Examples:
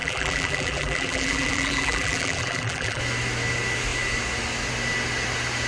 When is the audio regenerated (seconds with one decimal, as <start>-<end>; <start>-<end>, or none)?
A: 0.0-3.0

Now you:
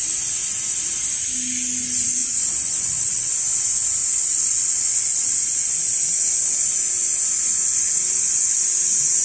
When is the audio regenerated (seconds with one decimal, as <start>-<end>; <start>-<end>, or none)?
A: 2.2-3.3; 4.0-5.1; 7.7-8.6

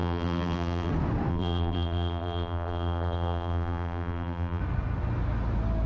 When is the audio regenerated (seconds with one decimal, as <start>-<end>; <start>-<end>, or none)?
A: 0.0-0.9; 1.3-4.6